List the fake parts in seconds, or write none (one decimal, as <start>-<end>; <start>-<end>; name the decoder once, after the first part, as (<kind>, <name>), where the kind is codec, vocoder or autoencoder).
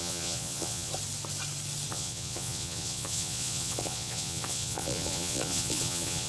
0.0-0.9 (vocoder, Vocos); 1.9-6.3